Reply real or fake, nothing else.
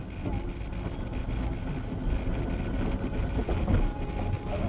real